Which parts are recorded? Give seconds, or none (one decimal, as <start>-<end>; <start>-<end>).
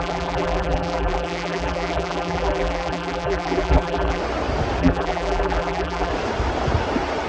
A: 4.2-4.8; 6.1-7.3